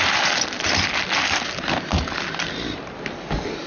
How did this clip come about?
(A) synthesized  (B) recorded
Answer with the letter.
B